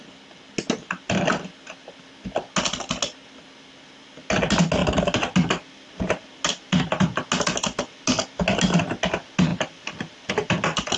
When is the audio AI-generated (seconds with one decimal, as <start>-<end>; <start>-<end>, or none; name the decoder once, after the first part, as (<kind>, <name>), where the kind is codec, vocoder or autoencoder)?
none